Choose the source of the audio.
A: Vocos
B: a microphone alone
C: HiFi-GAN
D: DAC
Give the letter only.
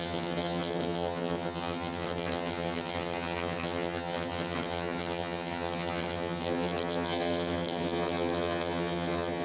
C